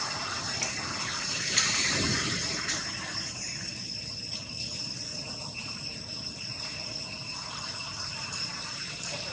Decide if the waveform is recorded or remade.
remade